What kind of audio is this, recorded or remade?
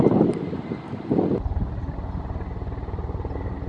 recorded